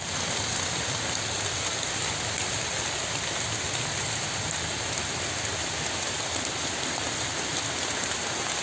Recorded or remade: recorded